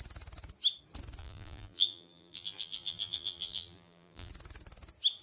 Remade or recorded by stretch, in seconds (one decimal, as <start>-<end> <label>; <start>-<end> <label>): 0.0-1.2 recorded; 1.2-4.3 remade; 4.3-5.2 recorded